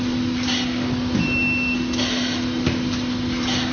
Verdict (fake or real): real